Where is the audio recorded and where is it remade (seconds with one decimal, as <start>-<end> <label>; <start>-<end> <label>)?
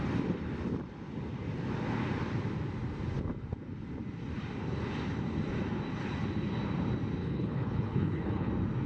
0.0-7.2 recorded; 7.2-8.5 remade; 8.5-8.9 recorded